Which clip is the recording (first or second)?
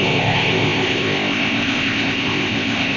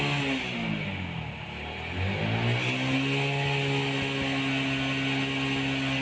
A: second